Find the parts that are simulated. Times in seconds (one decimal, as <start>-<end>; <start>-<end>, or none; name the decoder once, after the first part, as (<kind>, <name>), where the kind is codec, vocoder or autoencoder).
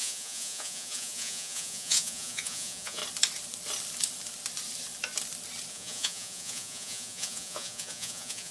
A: 0.0-3.0 (vocoder, Vocos); 5.7-8.5